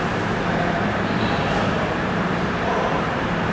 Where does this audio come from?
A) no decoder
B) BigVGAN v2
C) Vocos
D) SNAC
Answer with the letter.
B